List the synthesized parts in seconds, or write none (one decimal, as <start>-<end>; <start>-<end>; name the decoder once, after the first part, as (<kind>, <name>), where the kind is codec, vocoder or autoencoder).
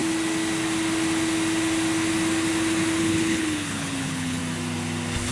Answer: 3.0-4.4 (codec, HILCodec)